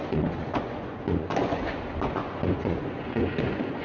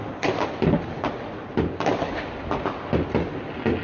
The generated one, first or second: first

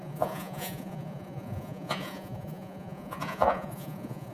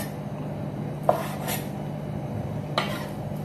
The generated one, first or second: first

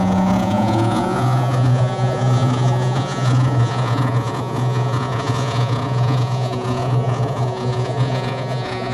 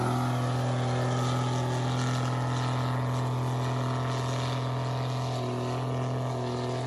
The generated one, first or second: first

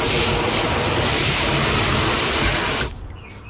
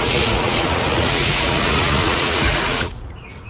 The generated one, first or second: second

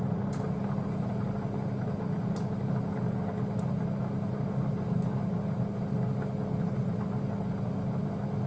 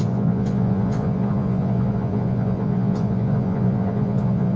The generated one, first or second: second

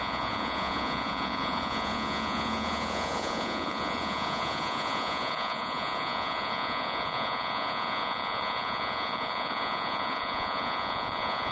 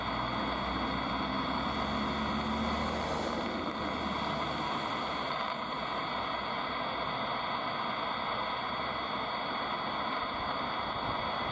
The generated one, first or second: first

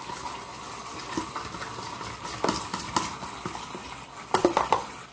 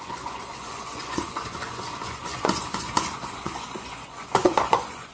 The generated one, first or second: second